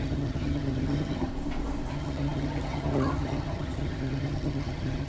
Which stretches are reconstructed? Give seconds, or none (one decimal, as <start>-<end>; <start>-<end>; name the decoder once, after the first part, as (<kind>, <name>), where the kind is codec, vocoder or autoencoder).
0.0-1.3 (vocoder, HiFi-GAN); 1.9-5.1

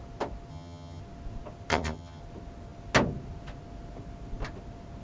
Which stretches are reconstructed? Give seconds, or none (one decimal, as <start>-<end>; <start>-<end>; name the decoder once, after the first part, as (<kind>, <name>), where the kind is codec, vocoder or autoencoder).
0.5-1.0 (vocoder, HiFi-GAN); 1.7-2.2

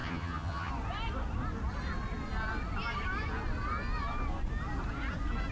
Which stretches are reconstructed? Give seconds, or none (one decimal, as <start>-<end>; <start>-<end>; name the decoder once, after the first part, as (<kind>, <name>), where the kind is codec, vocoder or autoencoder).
0.0-0.7 (vocoder, HiFi-GAN)

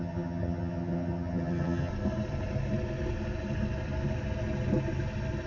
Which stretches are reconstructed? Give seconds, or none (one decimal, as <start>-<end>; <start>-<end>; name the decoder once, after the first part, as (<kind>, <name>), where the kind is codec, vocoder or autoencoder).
0.0-1.9 (vocoder, HiFi-GAN)

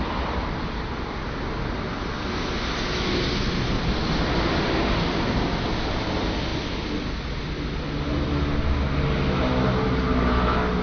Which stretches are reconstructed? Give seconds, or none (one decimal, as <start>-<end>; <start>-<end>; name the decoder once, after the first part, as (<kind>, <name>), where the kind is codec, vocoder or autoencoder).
none